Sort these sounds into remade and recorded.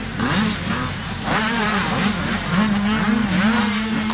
remade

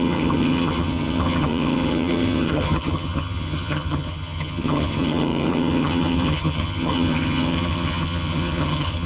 remade